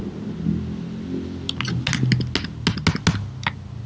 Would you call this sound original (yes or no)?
yes